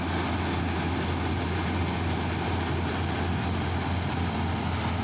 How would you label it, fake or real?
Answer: real